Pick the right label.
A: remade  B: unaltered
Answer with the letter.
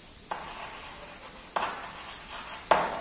B